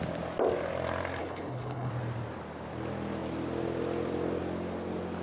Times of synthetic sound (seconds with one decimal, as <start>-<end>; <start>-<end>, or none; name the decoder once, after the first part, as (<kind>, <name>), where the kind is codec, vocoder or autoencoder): 1.2-1.9 (codec, HILCodec)